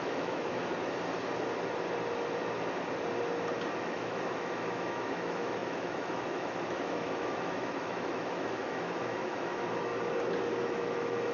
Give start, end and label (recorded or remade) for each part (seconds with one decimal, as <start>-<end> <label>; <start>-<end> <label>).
0.0-0.6 remade; 0.6-3.8 recorded; 3.8-9.9 remade; 9.9-10.7 recorded; 10.7-11.3 remade